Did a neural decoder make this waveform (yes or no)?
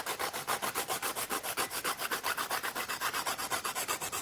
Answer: no